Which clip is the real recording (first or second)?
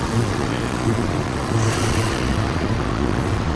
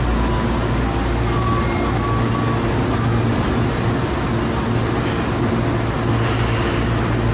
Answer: second